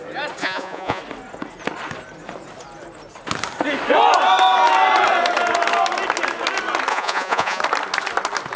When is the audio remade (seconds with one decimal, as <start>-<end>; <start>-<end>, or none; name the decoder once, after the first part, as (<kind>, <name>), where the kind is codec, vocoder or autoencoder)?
0.4-1.0 (vocoder, Vocos); 6.9-7.6